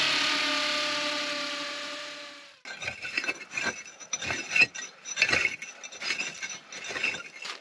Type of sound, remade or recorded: recorded